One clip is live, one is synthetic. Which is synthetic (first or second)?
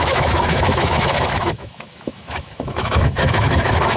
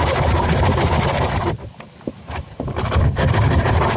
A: first